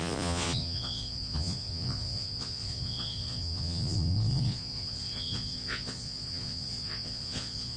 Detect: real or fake fake